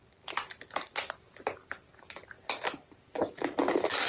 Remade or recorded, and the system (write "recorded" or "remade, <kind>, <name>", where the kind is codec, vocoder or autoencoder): recorded